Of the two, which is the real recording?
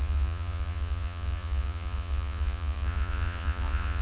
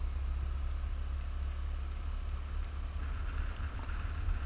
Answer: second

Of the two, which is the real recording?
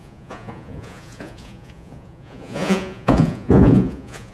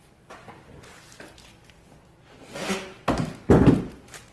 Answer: second